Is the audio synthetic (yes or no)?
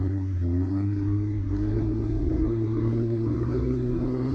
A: yes